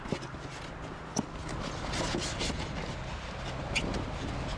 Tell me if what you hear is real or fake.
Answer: real